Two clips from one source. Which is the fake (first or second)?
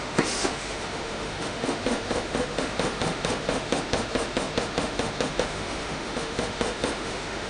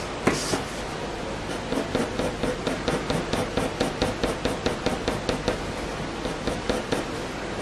first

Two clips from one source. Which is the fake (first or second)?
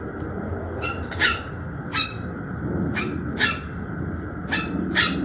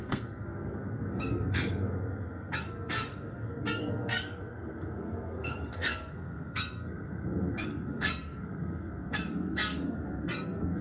second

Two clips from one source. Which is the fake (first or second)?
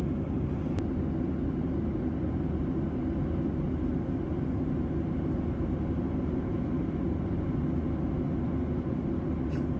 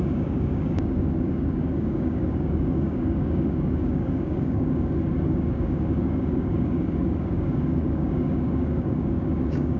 second